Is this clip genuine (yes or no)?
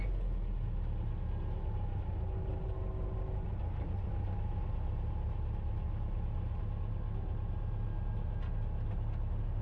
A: yes